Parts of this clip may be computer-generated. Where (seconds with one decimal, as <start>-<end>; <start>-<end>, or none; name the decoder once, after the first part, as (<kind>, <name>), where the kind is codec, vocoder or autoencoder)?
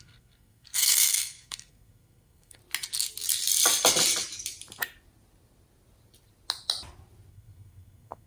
0.0-2.6 (codec, SNAC); 7.3-8.3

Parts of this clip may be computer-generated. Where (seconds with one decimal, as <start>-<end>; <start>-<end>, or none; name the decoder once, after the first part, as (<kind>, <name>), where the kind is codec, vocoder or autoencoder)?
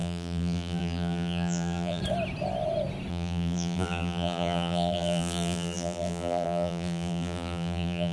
0.0-2.0 (vocoder, BigVGAN v2); 3.1-8.1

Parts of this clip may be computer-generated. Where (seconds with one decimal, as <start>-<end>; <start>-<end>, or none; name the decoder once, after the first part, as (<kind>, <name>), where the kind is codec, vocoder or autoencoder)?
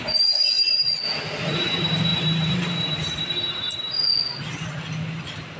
none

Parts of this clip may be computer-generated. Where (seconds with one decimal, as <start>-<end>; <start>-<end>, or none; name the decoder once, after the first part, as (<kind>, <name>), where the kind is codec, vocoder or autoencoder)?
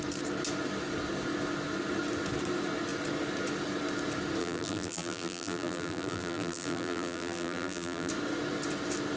4.4-8.1 (vocoder, BigVGAN v2)